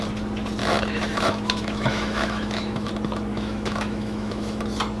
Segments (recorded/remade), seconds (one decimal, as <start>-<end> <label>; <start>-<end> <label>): 0.0-0.6 recorded; 0.6-2.9 remade; 2.9-3.3 recorded; 3.3-4.6 remade; 4.6-5.0 recorded